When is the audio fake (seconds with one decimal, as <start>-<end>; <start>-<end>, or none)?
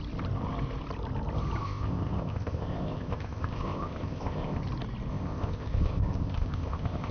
1.6-4.6; 5.1-7.1